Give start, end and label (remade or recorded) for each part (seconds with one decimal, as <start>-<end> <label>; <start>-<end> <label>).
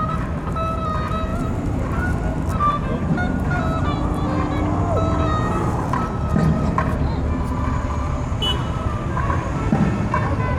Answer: 0.0-8.6 recorded; 8.6-10.0 remade; 10.0-10.6 recorded